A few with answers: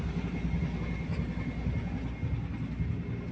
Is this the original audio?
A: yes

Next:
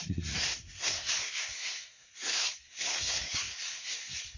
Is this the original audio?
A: no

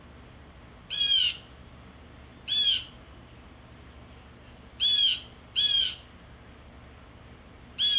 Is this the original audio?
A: yes